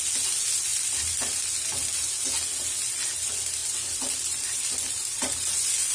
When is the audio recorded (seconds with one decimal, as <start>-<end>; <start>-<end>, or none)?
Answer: 0.0-5.9